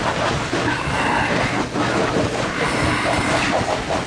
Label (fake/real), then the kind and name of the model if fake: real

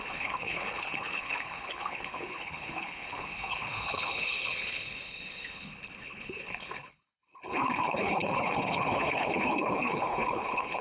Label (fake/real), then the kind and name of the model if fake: fake, codec, HILCodec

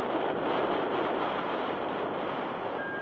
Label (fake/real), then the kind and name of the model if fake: real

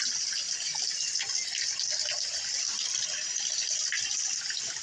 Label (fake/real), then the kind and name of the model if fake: real